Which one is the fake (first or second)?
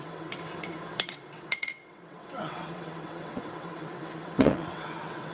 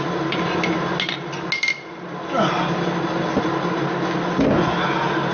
first